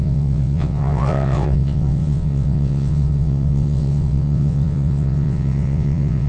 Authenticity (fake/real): fake